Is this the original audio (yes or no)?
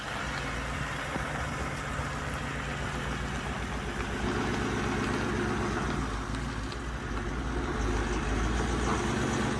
yes